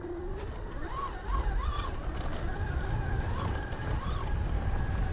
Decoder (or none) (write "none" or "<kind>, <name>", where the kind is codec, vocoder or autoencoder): none